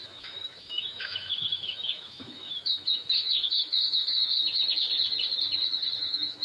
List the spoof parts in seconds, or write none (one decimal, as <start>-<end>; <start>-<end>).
0.0-4.3; 6.0-6.4